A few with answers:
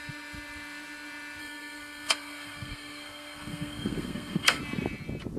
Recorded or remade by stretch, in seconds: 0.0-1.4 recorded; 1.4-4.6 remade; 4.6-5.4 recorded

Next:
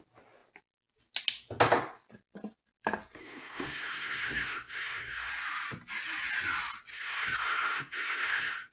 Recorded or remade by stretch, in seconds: 0.0-3.2 recorded; 3.2-5.3 remade; 5.3-6.9 recorded; 6.9-8.7 remade

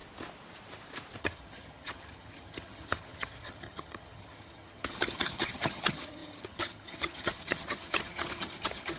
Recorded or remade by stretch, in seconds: 0.0-1.2 recorded; 1.2-9.0 remade

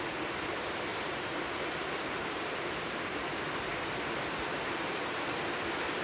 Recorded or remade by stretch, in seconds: 0.0-0.9 recorded; 0.9-2.5 remade; 2.5-6.0 recorded

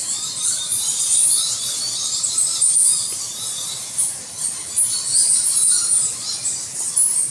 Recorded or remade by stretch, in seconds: 0.0-2.5 remade; 2.5-5.7 recorded; 5.7-7.3 remade

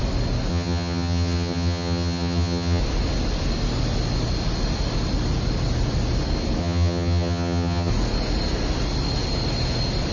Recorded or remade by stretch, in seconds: 0.0-0.5 recorded; 0.5-2.8 remade; 2.8-6.6 recorded; 6.6-7.9 remade; 7.9-10.1 recorded